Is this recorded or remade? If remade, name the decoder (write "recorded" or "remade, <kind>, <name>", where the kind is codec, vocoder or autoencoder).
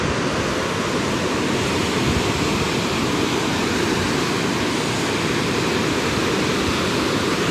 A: recorded